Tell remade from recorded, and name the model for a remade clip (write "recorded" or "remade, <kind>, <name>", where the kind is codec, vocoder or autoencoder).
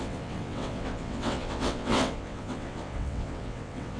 remade, vocoder, WaveNeXt